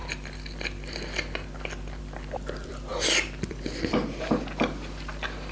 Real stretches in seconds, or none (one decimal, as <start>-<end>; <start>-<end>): none